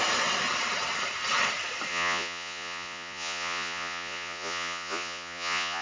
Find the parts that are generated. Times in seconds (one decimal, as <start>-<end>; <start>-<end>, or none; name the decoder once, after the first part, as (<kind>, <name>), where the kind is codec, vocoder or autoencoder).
1.9-5.8 (vocoder, Vocos)